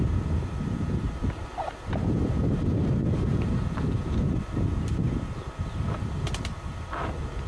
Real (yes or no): no